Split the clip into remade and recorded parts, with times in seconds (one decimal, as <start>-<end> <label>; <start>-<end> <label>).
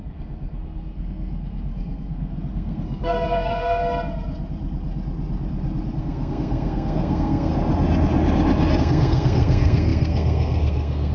0.0-3.8 remade; 3.8-6.0 recorded; 6.0-7.5 remade; 7.5-8.8 recorded; 8.8-11.1 remade